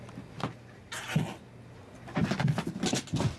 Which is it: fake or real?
real